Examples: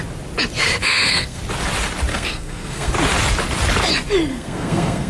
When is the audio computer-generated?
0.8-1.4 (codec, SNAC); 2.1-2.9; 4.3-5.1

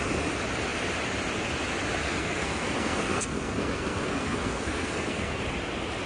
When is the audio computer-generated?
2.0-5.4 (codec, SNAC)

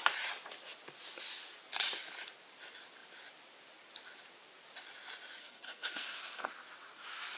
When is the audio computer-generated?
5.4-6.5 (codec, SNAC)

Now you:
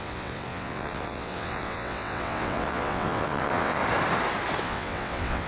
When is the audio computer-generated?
0.0-3.8 (vocoder, WaveNeXt); 4.6-5.5